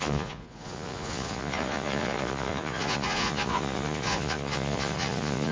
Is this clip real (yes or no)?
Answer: no